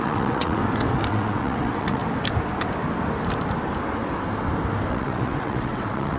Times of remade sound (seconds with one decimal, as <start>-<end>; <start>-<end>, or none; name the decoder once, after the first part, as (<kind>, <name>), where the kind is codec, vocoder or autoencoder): 0.0-0.6 (vocoder, WaveNeXt); 1.1-2.0; 4.9-6.2